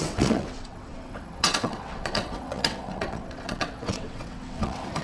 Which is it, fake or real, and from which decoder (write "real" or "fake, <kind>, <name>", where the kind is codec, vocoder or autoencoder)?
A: fake, vocoder, WaveNeXt